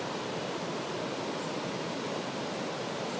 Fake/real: real